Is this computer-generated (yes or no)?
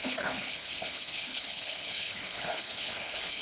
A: yes